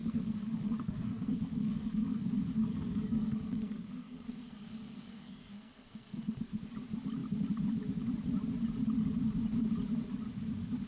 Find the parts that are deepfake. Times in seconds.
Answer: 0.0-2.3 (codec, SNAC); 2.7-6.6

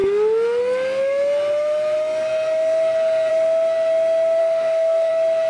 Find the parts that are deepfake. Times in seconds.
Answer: 4.4-5.1 (codec, SNAC)